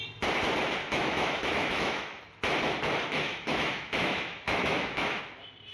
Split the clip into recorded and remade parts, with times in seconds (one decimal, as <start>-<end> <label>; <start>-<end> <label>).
0.0-0.8 recorded; 0.8-2.2 remade; 2.2-3.3 recorded; 3.3-5.2 remade; 5.2-5.7 recorded